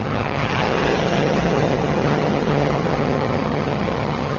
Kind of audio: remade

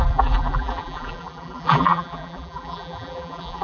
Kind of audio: remade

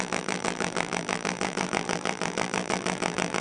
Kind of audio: remade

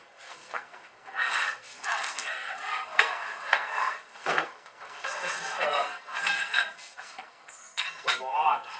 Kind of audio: remade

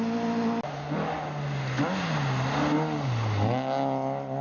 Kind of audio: recorded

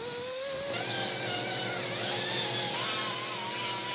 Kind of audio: recorded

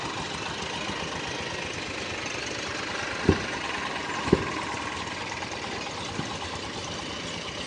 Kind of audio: recorded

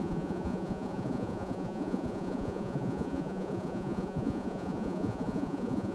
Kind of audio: remade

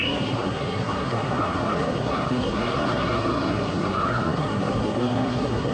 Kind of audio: remade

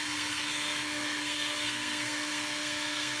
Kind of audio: remade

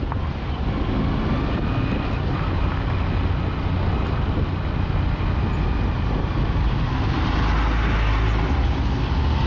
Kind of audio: recorded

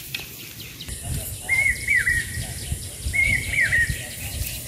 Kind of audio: remade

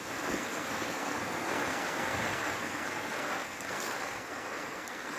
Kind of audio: remade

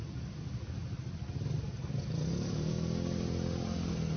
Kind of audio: recorded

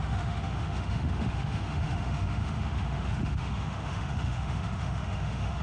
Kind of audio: remade